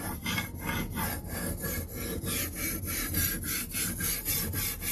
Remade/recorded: recorded